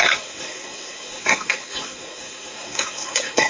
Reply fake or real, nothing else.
fake